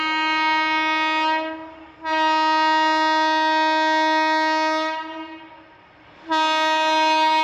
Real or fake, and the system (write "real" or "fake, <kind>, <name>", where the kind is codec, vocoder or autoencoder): real